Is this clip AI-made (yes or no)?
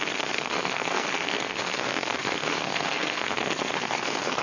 yes